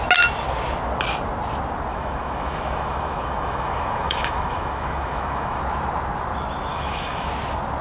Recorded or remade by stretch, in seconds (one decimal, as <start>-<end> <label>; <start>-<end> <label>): 0.0-1.9 recorded; 1.9-5.6 remade; 5.6-6.7 recorded; 6.7-7.3 remade; 7.3-7.8 recorded